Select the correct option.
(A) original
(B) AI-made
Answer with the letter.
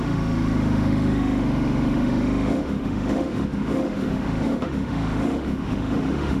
B